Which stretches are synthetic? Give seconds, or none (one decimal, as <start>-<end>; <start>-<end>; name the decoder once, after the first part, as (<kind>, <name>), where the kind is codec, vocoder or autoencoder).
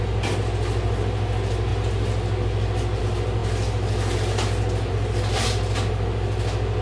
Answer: none